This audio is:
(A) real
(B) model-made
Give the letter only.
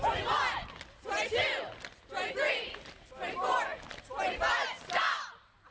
A